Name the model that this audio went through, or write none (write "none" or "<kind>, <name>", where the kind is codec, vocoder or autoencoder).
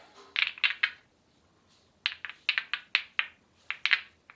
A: none